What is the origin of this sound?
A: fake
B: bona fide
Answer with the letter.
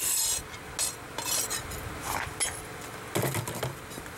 B